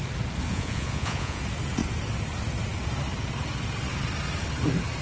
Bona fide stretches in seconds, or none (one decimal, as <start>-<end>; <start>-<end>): 0.0-0.5; 1.4-5.0